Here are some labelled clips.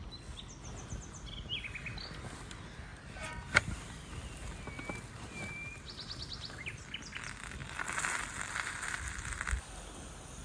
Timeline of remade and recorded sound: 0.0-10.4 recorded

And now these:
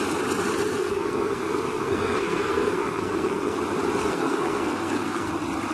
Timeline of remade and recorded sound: 0.0-0.7 recorded; 0.7-3.6 remade; 3.6-4.0 recorded; 4.0-5.3 remade; 5.3-5.7 recorded

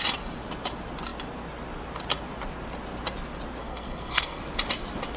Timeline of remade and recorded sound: 0.0-3.6 recorded; 3.6-4.4 remade; 4.4-5.2 recorded